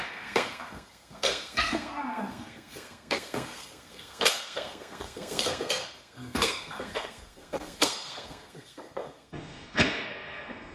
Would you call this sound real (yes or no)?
no